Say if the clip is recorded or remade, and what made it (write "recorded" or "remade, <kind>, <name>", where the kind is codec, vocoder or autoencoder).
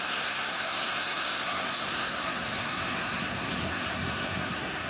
remade, codec, SNAC